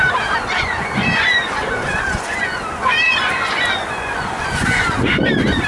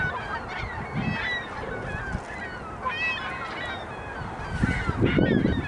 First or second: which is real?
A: second